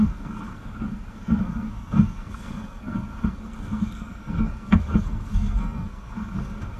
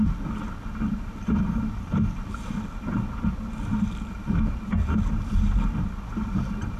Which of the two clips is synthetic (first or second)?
first